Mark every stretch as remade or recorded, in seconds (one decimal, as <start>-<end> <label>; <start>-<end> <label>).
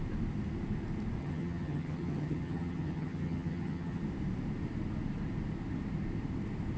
0.0-1.2 recorded; 1.2-4.0 remade; 4.0-6.8 recorded